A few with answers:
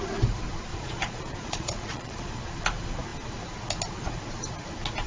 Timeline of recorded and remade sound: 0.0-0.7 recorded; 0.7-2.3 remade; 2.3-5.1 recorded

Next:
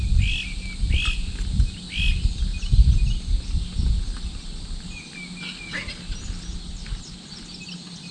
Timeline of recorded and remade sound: 0.0-8.1 recorded

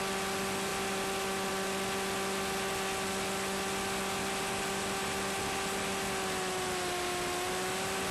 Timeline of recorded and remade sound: 0.0-8.1 recorded

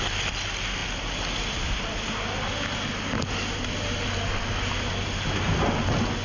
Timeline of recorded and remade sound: 0.0-6.2 recorded